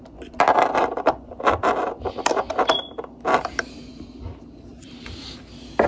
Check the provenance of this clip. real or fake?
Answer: real